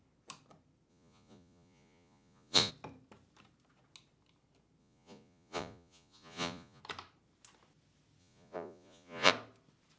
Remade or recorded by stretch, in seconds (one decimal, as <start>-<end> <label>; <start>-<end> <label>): 0.0-0.9 recorded; 0.9-2.7 remade; 2.7-4.8 recorded; 4.8-6.8 remade; 6.8-8.2 recorded; 8.2-9.3 remade; 9.3-10.0 recorded